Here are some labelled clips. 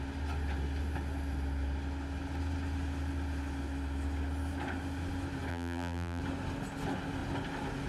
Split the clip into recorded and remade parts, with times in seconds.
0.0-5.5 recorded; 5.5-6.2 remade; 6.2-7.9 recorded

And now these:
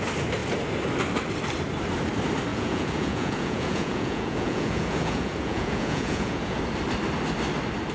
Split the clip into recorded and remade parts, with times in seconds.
0.0-2.5 recorded; 2.5-6.6 remade; 6.6-7.9 recorded

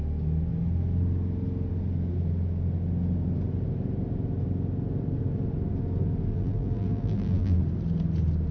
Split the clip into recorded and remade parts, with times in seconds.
0.0-6.3 recorded; 6.3-7.6 remade; 7.6-8.5 recorded